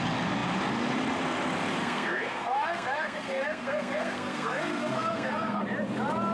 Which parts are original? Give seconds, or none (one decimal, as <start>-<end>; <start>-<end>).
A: 0.0-1.8; 5.6-6.3